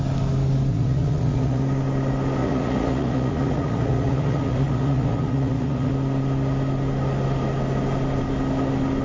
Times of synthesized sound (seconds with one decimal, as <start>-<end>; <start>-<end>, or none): 0.7-1.6; 2.4-5.9